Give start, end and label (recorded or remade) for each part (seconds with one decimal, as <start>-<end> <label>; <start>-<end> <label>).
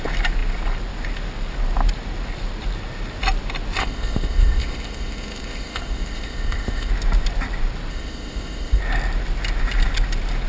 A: 0.0-3.8 recorded; 3.8-6.9 remade; 6.9-7.9 recorded; 7.9-8.8 remade; 8.8-10.5 recorded